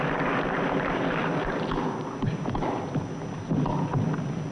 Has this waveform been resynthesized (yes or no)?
no